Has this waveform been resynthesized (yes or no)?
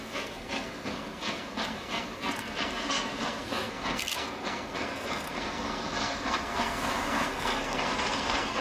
yes